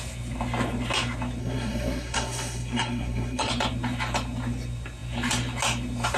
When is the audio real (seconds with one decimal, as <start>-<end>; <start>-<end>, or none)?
0.0-1.4; 3.5-6.2